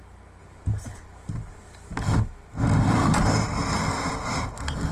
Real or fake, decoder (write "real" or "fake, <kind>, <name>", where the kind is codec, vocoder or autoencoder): real